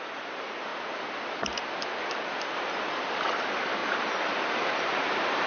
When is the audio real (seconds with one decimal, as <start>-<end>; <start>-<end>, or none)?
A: 0.0-3.8